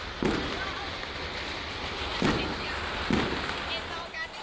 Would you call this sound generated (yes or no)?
no